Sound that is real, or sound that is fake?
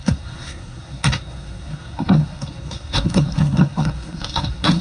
fake